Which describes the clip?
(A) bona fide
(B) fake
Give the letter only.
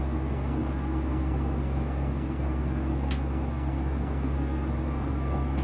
B